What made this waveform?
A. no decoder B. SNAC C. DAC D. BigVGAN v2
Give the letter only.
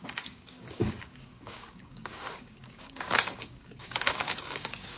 C